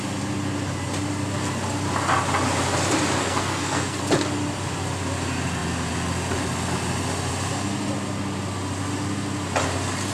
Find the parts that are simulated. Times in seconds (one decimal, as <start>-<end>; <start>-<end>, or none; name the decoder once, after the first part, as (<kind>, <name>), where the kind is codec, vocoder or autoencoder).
3.2-4.0 (codec, SNAC)